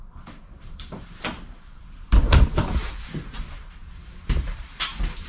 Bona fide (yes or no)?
no